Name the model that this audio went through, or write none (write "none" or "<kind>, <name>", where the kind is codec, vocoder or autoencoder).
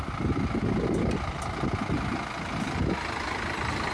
none